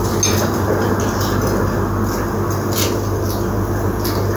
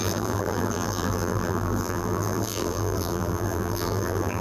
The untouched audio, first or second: first